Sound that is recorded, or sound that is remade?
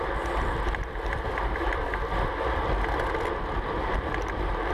recorded